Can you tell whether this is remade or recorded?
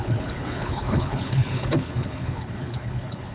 remade